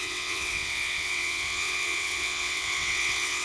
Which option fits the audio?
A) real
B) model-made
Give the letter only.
B